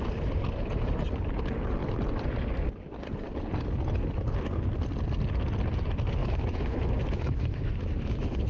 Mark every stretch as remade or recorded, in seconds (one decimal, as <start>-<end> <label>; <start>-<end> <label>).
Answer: 0.0-6.2 recorded; 6.2-8.5 remade